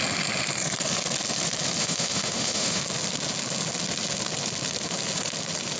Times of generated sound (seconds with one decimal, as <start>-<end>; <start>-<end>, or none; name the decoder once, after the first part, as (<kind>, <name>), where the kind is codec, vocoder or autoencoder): 1.8-2.8 (autoencoder, DAC-VAE)